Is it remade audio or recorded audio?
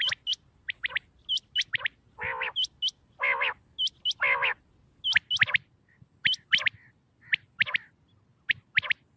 recorded